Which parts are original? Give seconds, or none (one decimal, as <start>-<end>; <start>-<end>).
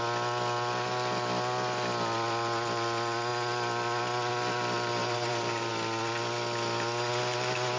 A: 0.0-5.0; 5.7-7.8